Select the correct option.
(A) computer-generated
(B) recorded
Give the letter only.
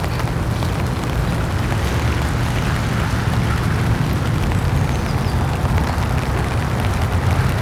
B